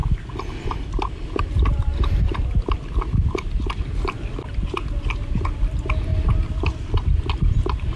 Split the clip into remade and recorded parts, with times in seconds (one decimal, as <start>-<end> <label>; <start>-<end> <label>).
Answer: 0.0-8.0 remade